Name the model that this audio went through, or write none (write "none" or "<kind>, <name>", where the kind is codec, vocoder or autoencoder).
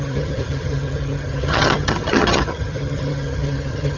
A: vocoder, HiFi-GAN